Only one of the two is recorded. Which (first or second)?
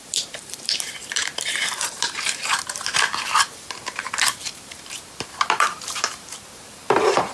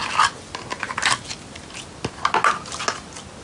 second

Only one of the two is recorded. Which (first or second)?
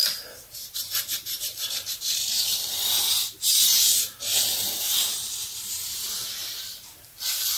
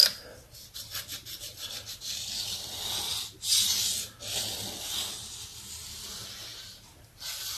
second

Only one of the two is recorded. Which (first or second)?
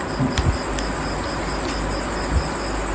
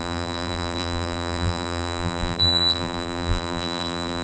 first